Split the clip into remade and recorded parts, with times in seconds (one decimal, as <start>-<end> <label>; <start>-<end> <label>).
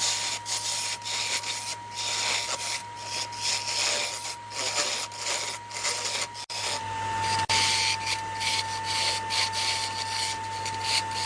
0.0-11.3 recorded